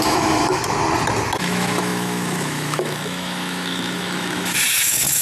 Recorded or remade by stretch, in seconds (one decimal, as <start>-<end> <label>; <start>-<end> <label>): 0.0-0.6 remade; 0.6-1.4 recorded; 1.4-5.2 remade